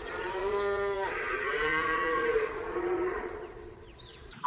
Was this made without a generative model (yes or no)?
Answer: no